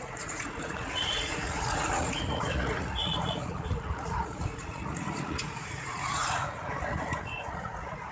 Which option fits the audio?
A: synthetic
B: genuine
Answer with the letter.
A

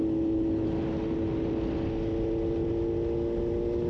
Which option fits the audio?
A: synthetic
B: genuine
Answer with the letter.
B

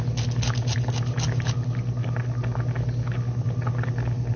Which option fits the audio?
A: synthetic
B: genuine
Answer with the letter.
B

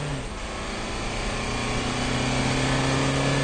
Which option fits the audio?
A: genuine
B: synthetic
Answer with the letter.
A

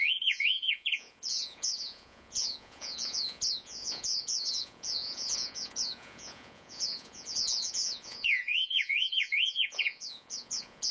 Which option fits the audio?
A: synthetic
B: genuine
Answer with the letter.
A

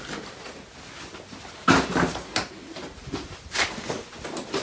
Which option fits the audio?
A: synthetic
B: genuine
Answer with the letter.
B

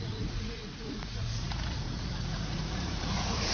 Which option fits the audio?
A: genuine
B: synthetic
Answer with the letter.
B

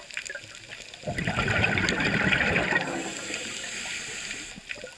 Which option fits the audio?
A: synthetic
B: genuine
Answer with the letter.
B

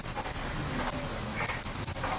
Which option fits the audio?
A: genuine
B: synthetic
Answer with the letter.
A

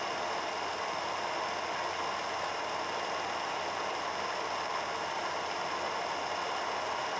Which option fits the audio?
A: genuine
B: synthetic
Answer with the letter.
A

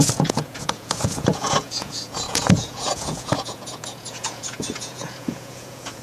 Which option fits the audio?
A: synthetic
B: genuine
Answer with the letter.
A